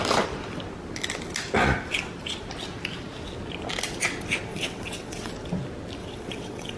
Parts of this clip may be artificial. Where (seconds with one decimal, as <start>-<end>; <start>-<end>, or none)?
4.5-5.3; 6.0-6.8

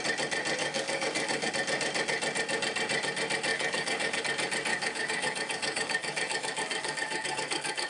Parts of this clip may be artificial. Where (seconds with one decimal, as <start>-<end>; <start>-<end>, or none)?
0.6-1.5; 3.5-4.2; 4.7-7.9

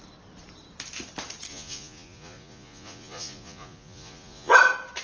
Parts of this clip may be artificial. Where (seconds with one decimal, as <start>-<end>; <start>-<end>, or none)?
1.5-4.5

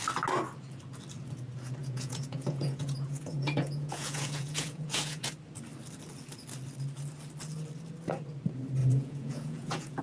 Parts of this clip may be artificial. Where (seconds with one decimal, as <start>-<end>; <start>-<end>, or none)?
1.8-5.2; 8.8-10.0

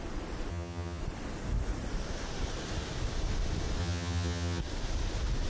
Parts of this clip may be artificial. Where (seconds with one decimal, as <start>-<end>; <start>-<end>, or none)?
0.5-1.0; 3.8-4.6